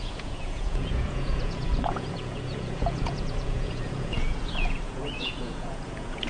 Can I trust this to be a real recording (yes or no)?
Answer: no